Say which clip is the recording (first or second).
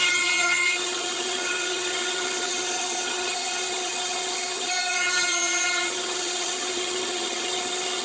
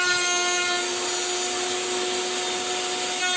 second